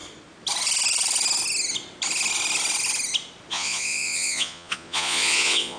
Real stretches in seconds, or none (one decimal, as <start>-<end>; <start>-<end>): 0.0-3.5